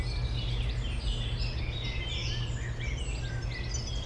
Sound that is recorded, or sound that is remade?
recorded